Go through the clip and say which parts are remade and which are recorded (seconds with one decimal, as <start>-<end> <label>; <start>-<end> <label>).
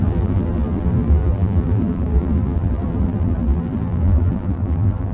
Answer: 0.0-5.1 remade